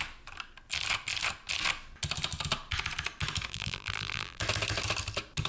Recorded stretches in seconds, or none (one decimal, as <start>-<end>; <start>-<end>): 0.0-3.5; 4.4-5.5